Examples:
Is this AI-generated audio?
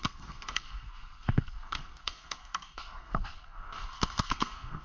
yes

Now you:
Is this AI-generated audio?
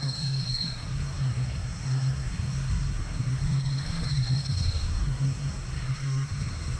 yes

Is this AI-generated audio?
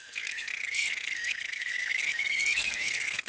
yes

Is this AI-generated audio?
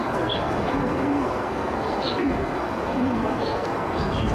yes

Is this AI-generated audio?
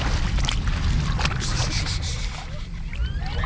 no